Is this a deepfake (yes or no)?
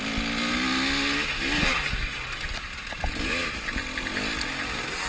no